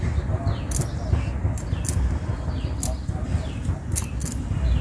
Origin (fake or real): real